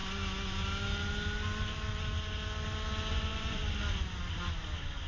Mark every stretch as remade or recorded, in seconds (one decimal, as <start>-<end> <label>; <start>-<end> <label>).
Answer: 0.0-3.1 recorded; 3.1-3.6 remade; 3.6-5.1 recorded